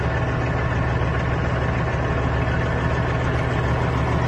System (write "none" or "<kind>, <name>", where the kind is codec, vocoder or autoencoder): none